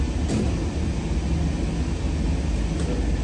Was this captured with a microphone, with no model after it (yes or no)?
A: yes